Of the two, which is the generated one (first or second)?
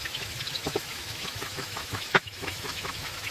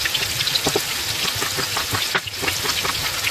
first